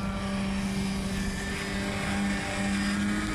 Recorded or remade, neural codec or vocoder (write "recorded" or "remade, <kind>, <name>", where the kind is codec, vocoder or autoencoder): recorded